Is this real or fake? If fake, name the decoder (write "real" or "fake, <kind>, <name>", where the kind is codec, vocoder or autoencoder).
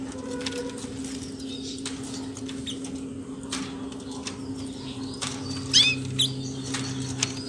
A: real